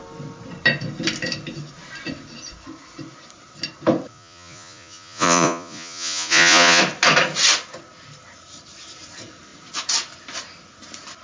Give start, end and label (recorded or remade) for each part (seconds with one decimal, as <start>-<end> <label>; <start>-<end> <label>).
0.0-4.1 recorded; 4.1-6.8 remade; 6.8-11.2 recorded